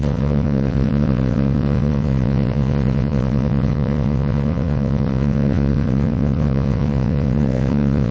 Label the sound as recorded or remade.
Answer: remade